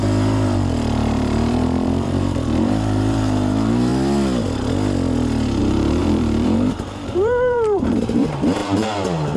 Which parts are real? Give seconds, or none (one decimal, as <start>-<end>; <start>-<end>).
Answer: 3.9-5.6